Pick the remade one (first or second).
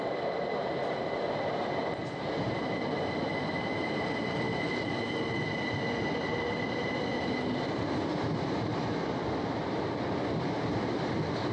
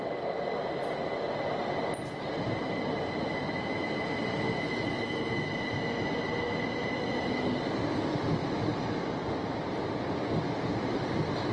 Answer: first